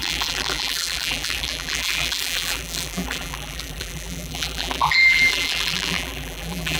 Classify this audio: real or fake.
fake